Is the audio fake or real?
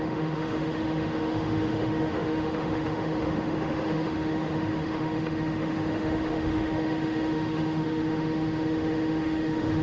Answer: fake